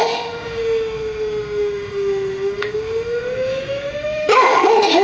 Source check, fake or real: fake